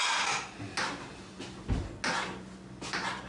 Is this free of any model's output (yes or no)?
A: yes